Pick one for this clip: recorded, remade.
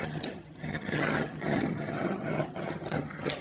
remade